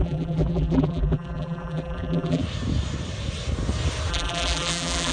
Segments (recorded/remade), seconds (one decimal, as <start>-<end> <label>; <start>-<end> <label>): 0.0-2.4 remade; 2.4-4.1 recorded; 4.1-5.1 remade